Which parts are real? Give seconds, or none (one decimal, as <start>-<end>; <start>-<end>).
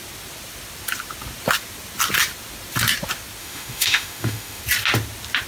0.0-3.4; 4.6-5.5